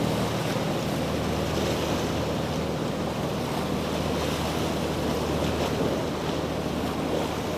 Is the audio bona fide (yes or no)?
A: yes